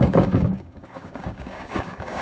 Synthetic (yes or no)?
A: yes